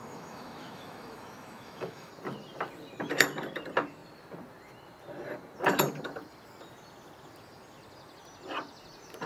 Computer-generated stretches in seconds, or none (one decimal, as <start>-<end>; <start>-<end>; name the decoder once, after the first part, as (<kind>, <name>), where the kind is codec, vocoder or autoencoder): 0.0-2.1 (autoencoder, DAC-VAE)